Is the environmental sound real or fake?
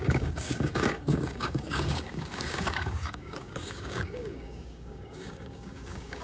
fake